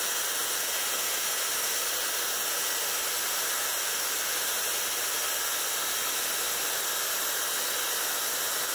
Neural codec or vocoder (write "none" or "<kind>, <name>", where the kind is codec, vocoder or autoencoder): none